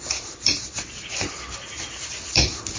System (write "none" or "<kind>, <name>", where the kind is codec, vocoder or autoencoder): vocoder, BigVGAN v2